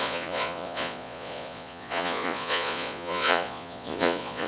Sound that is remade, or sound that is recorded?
remade